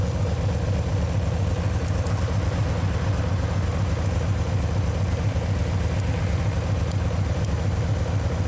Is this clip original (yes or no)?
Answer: yes